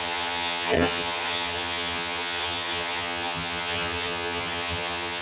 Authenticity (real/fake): fake